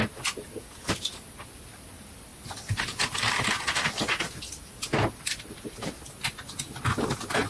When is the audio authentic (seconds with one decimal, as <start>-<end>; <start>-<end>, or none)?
0.0-7.5